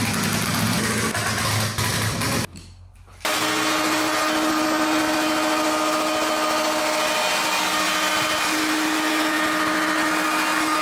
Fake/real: real